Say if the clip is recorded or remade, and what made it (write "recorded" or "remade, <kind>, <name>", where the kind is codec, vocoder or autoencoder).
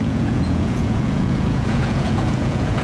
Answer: remade, vocoder, Vocos